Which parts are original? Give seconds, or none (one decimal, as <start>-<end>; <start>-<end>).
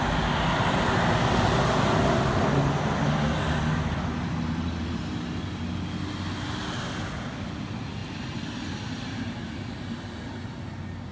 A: 0.0-11.1